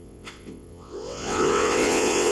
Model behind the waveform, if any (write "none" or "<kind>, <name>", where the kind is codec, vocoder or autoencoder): vocoder, WaveNeXt